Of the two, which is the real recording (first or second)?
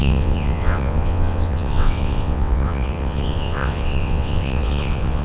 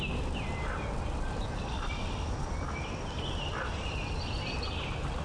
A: second